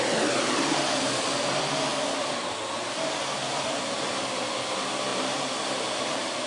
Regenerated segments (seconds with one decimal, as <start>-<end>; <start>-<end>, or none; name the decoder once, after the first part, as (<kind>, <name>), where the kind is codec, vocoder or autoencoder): 5.1-6.5 (vocoder, BigVGAN v2)